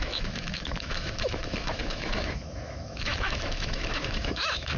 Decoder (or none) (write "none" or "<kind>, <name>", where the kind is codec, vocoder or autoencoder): autoencoder, DAC-VAE